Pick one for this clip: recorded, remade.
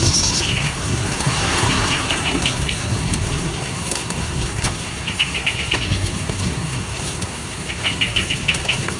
remade